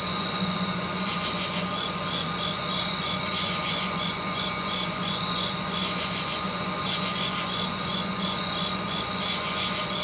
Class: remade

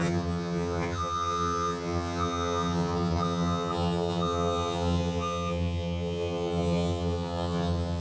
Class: remade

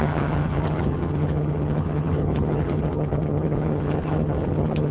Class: remade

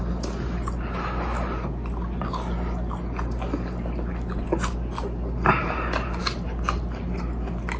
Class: recorded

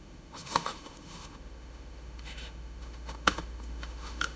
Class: remade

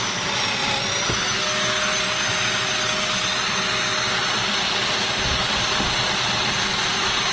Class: recorded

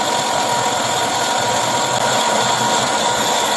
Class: recorded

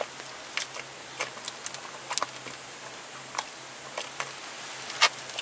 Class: recorded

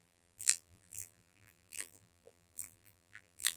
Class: remade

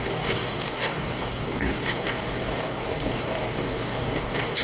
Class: remade